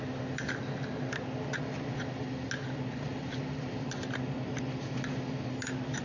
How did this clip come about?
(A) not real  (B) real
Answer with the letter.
B